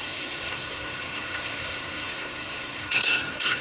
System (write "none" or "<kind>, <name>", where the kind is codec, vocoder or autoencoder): codec, SNAC